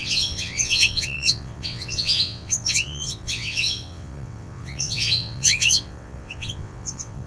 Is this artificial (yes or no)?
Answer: yes